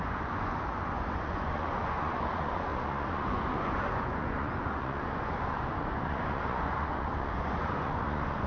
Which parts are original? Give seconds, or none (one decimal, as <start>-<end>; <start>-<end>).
none